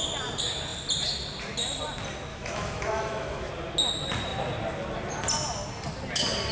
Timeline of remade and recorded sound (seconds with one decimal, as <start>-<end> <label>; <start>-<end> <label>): 0.0-2.3 recorded; 2.3-3.5 remade; 3.5-6.5 recorded